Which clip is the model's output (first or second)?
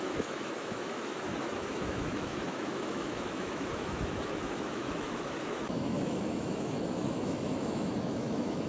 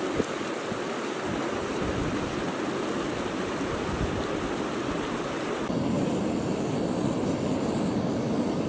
first